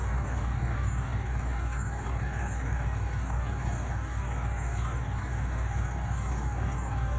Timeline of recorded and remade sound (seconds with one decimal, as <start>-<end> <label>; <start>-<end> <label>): 0.0-7.2 remade